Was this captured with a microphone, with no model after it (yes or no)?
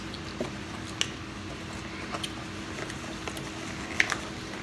yes